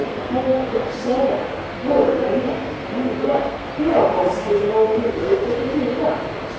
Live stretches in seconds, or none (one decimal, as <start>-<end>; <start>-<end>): 1.2-1.6; 5.6-6.6